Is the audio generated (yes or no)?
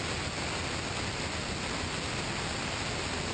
no